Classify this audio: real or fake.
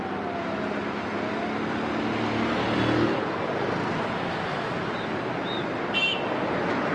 real